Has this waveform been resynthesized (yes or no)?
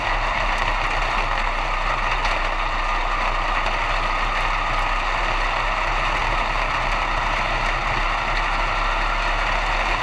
no